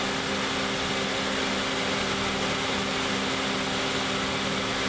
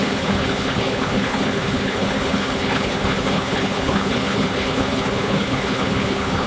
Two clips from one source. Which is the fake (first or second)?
second